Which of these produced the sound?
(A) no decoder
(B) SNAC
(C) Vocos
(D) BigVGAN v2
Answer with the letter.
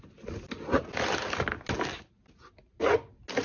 A